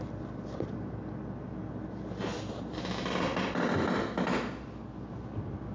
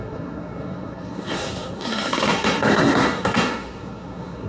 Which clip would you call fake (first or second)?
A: second